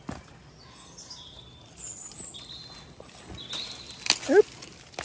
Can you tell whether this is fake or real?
real